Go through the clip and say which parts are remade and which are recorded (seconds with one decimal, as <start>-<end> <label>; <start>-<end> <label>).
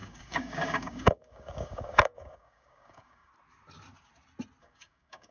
0.0-3.3 remade; 3.3-4.6 recorded; 4.6-5.3 remade